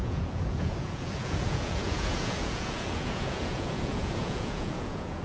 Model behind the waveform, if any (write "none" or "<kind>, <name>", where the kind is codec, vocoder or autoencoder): vocoder, Vocos